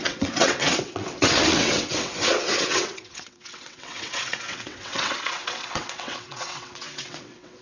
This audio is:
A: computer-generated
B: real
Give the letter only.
A